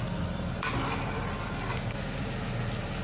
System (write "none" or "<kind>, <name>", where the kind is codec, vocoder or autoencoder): none